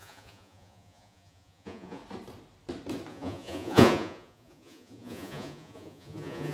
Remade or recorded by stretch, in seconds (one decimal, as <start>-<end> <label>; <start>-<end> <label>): 0.0-2.0 remade; 2.0-3.1 recorded; 3.1-6.5 remade

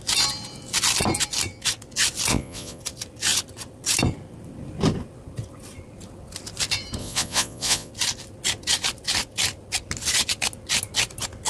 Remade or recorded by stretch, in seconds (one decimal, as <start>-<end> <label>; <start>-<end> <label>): 0.0-2.3 recorded; 2.3-2.8 remade; 2.8-7.0 recorded; 7.0-7.9 remade; 7.9-11.5 recorded

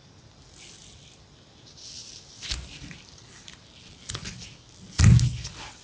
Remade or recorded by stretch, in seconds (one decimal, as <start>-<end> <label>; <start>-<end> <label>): 0.0-5.8 recorded